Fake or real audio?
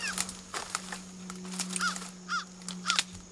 real